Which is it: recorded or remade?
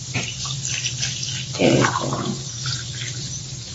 recorded